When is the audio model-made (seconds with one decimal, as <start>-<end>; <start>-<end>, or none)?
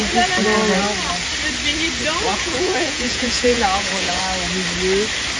2.3-4.2